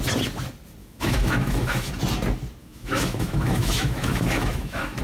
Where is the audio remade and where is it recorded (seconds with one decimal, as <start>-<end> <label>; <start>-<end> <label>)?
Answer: 0.0-0.8 recorded; 0.8-1.9 remade; 1.9-2.6 recorded; 2.6-5.0 remade